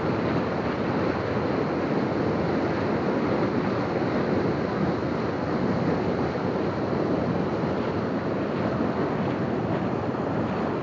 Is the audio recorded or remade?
recorded